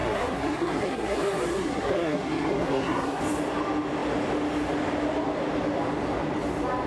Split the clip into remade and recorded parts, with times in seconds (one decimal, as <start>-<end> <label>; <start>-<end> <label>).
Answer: 0.0-3.2 remade; 3.2-6.9 recorded